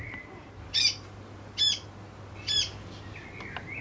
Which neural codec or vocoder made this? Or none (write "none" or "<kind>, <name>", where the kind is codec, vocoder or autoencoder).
none